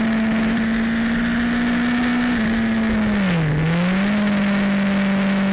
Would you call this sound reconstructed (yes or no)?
no